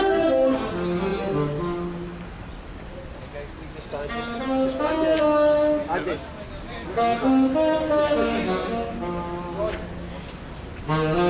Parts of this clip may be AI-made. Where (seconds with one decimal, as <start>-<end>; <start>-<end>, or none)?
none